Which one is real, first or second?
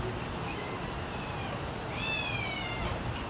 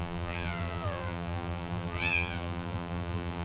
first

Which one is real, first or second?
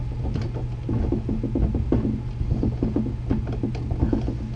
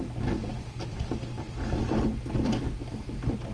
first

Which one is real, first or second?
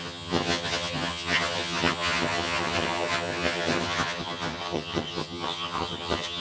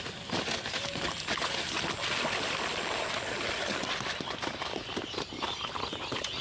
second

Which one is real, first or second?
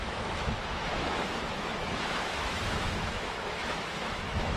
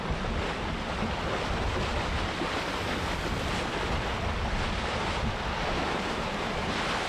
second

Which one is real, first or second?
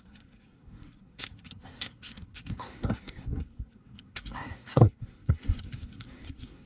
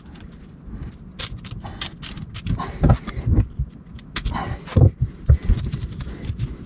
second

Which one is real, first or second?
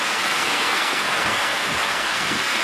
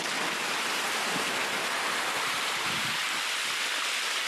second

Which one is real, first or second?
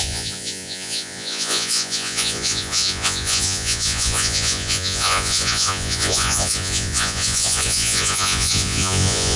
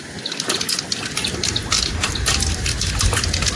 second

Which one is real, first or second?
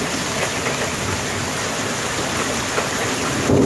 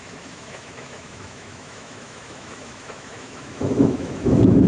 first